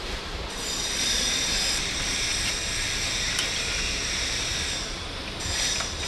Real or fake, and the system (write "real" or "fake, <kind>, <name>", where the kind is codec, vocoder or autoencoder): fake, vocoder, BigVGAN v2